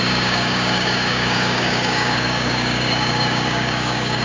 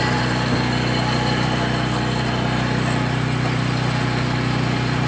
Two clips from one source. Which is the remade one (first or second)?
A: first